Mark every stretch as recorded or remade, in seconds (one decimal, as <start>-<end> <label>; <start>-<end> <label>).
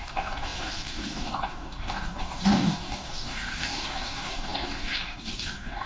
0.0-5.9 remade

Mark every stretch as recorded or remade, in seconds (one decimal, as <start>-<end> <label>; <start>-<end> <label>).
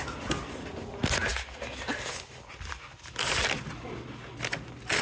0.0-5.0 recorded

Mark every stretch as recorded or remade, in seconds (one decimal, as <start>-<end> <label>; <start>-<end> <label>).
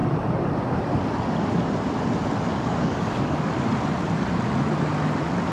0.0-2.5 recorded; 2.5-3.5 remade; 3.5-5.5 recorded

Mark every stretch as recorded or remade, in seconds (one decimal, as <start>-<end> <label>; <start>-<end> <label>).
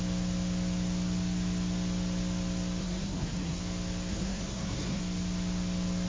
0.0-2.8 recorded; 2.8-3.6 remade; 3.6-4.1 recorded; 4.1-5.0 remade; 5.0-6.1 recorded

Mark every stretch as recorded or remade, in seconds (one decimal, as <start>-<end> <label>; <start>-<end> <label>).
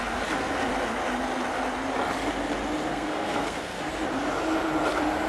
0.0-2.9 recorded; 2.9-3.9 remade; 3.9-5.3 recorded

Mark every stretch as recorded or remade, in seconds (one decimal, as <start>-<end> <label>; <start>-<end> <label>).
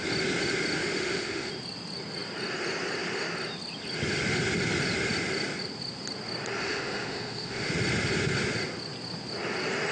0.0-0.8 recorded; 0.8-1.5 remade; 1.5-6.6 recorded; 6.6-7.7 remade; 7.7-9.9 recorded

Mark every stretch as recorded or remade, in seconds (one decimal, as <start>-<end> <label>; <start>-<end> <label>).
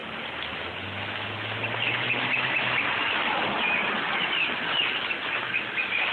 0.0-6.1 recorded